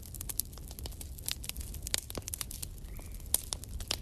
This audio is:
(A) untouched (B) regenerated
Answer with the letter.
A